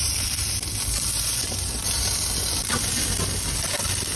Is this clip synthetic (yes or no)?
no